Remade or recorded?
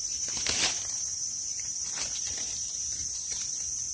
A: recorded